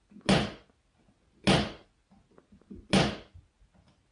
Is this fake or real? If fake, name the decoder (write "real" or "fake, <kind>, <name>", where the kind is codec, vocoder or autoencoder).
real